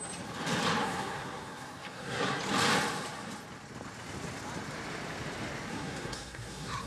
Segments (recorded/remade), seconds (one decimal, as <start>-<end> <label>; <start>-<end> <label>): 0.0-0.8 recorded; 0.8-2.4 remade; 2.4-5.7 recorded; 5.7-6.9 remade